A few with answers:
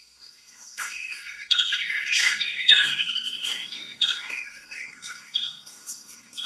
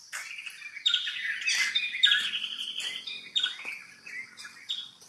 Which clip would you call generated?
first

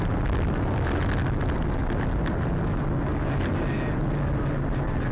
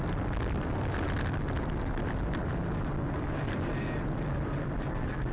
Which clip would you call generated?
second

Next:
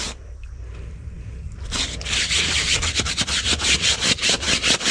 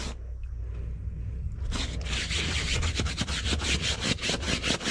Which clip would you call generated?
first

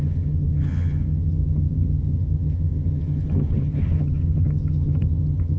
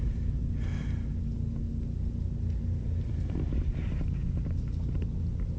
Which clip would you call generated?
first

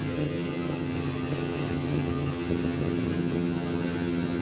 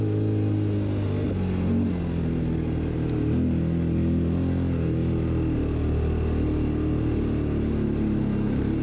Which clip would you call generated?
first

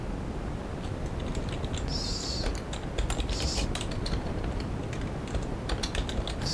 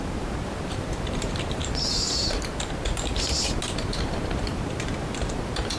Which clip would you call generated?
second